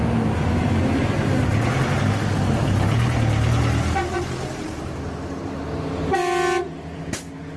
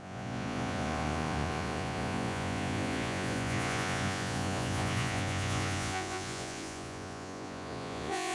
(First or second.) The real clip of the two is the first